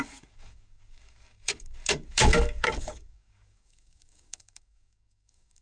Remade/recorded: remade